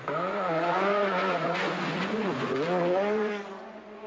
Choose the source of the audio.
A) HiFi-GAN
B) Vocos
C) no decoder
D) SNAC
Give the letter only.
B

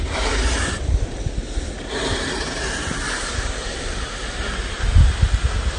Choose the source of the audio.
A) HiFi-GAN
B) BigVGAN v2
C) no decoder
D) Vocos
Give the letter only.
C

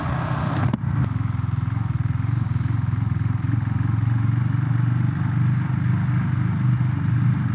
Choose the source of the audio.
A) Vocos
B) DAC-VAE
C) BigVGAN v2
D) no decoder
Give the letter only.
D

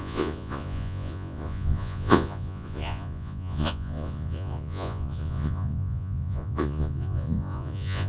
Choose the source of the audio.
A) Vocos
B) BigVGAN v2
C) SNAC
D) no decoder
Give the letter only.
A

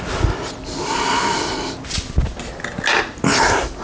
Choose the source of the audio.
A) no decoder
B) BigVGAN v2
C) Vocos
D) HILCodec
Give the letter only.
A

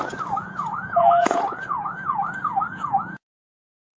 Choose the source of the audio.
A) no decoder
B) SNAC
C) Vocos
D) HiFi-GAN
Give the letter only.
C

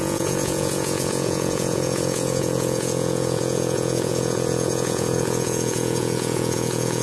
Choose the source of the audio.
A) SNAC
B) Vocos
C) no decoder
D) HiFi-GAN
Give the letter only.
B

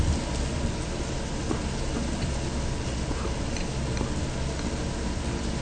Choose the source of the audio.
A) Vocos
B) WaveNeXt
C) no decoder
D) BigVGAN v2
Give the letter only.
C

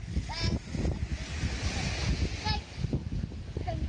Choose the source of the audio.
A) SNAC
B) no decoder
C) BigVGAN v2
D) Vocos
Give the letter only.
B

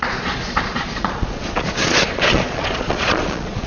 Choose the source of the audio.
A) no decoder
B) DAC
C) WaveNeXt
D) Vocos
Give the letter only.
D